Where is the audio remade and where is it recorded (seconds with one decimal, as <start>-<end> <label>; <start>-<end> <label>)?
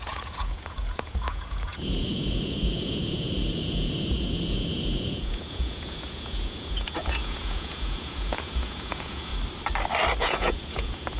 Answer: 0.0-9.3 remade; 9.3-10.2 recorded; 10.2-11.2 remade